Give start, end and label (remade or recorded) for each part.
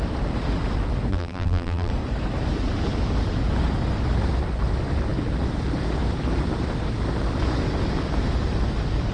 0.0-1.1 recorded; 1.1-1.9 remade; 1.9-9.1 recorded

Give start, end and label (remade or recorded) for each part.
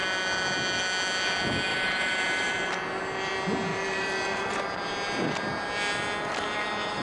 0.0-1.7 recorded; 1.7-2.7 remade; 2.7-3.7 recorded; 3.7-4.6 remade; 4.6-7.0 recorded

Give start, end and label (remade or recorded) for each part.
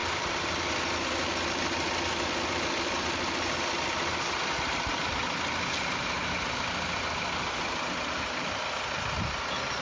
0.0-0.7 remade; 0.7-9.8 recorded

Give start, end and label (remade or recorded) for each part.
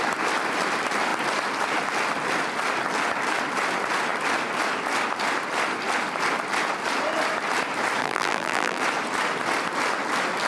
0.0-8.0 recorded; 8.0-8.8 remade; 8.8-10.5 recorded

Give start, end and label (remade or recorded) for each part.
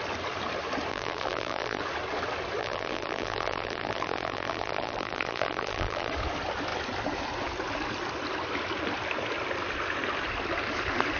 0.0-0.9 recorded; 0.9-1.8 remade; 1.8-2.6 recorded; 2.6-6.1 remade; 6.1-11.2 recorded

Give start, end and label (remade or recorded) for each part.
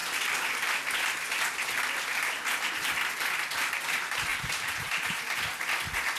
0.0-4.3 recorded; 4.3-5.2 remade; 5.2-6.2 recorded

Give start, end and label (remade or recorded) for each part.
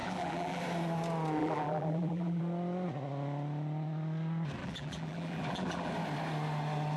0.0-0.6 remade; 0.6-1.4 recorded; 1.4-2.4 remade; 2.4-4.6 recorded; 4.6-5.9 remade; 5.9-7.0 recorded